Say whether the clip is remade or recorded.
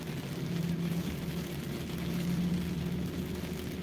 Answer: recorded